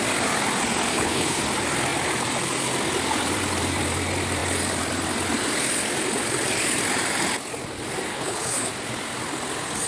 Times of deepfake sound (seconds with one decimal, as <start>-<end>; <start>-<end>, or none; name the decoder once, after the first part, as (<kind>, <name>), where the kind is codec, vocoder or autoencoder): 0.9-1.4 (codec, HILCodec); 8.1-8.7